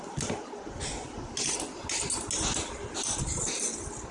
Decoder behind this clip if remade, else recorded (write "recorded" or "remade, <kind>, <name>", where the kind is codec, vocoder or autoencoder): recorded